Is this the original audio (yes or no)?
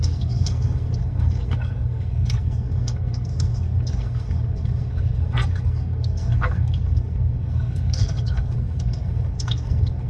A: no